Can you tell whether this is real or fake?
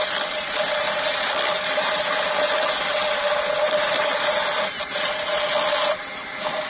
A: real